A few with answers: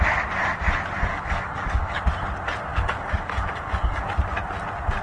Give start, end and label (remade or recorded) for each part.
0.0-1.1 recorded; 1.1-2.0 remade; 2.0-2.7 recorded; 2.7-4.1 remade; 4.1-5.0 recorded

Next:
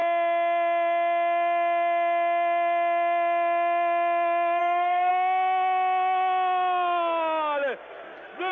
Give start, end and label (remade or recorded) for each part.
0.0-4.6 recorded; 4.6-5.1 remade; 5.1-8.5 recorded

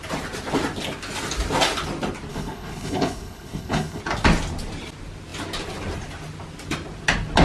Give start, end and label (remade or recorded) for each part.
0.0-2.3 recorded; 2.3-4.0 remade; 4.0-7.4 recorded

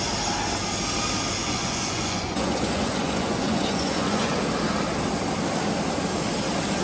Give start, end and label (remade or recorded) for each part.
0.0-1.4 recorded; 1.4-4.4 remade; 4.4-6.8 recorded

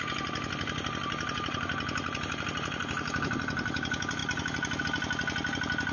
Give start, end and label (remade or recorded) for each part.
0.0-5.9 recorded

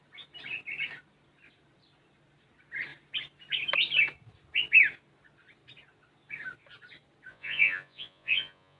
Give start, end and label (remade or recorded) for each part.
0.0-7.3 recorded; 7.3-8.8 remade

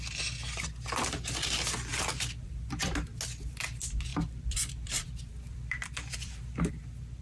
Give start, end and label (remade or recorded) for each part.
0.0-1.9 recorded; 1.9-3.2 remade; 3.2-4.1 recorded; 4.1-6.7 remade; 6.7-7.2 recorded